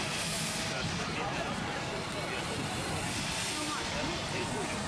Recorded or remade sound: recorded